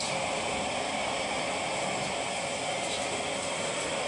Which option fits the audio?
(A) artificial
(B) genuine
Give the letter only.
B